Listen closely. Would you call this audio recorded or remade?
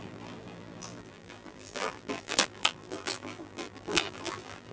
remade